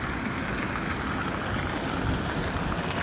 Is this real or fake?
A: real